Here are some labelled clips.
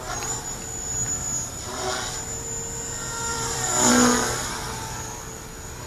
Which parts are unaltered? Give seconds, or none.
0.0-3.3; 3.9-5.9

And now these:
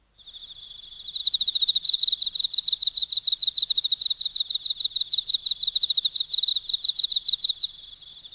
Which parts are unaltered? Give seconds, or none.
0.0-1.2; 2.0-3.0; 4.0-8.3

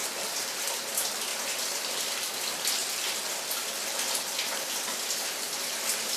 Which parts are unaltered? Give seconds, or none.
0.6-6.2

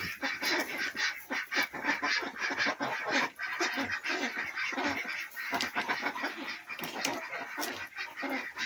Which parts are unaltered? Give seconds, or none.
0.5-5.3; 7.1-7.9

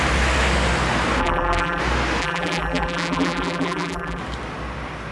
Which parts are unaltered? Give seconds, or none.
0.0-1.2; 1.8-2.2; 4.2-5.1